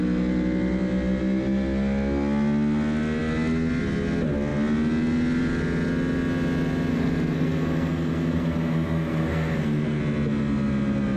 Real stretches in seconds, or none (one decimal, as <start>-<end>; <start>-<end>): 0.0-6.9; 10.0-11.2